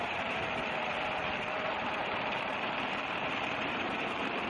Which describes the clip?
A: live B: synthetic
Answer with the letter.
B